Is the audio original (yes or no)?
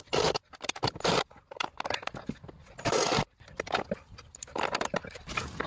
yes